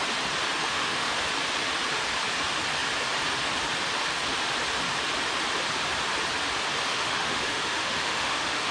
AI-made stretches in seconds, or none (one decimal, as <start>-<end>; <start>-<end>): 0.6-1.1; 6.9-8.7